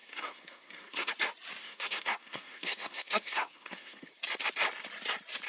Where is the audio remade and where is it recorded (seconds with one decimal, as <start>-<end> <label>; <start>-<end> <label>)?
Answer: 0.0-1.1 remade; 1.1-1.6 recorded; 1.6-4.1 remade; 4.1-5.5 recorded